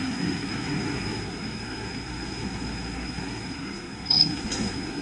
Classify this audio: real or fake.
fake